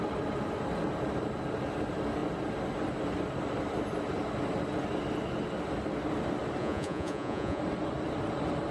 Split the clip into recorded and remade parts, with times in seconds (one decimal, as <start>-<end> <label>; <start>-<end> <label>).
0.0-6.6 recorded; 6.6-7.6 remade; 7.6-8.7 recorded